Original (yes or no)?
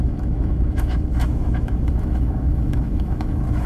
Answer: no